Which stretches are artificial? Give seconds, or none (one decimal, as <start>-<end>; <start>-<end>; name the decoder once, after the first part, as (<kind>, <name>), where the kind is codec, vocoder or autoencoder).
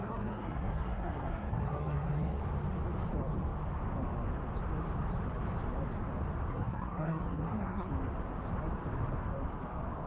0.0-2.4 (codec, SNAC); 6.5-7.9